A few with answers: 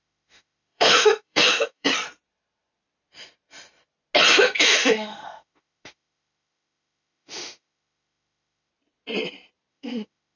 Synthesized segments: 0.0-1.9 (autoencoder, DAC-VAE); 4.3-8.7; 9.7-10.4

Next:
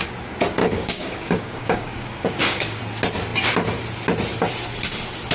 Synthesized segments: 0.6-2.8 (codec, DAC)

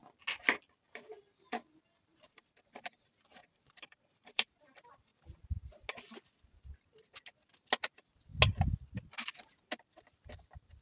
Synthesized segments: 2.1-4.6 (vocoder, BigVGAN v2)

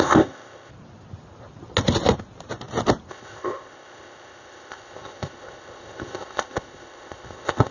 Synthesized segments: 0.0-0.7 (codec, ZipCodec); 3.1-7.7